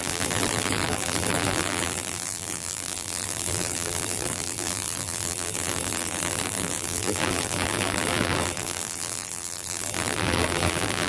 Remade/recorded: remade